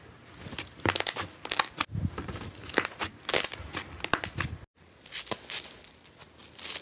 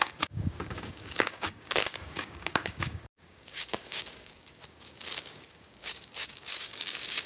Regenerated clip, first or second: second